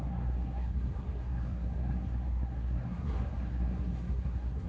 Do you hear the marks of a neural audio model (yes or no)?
yes